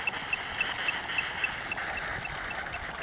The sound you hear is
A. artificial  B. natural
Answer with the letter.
B